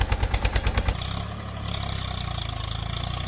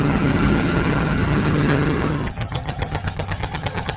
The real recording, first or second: first